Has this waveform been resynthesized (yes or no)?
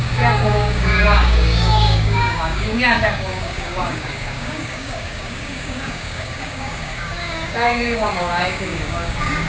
yes